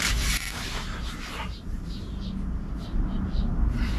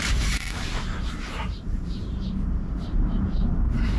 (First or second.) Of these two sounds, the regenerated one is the second